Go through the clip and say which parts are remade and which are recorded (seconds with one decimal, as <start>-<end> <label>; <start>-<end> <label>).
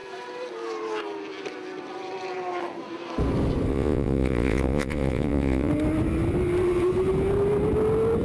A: 0.0-3.7 recorded; 3.7-5.7 remade; 5.7-8.2 recorded